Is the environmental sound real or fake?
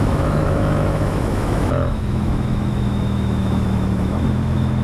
fake